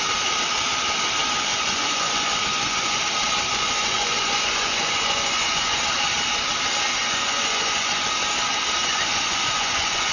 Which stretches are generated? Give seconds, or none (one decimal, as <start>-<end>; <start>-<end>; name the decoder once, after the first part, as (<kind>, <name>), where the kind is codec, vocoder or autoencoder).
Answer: 1.5-3.0 (vocoder, Vocos); 3.5-5.8; 7.0-8.0; 8.9-10.1